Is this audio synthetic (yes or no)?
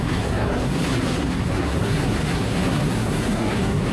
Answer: yes